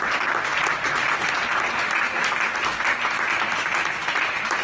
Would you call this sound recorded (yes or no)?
yes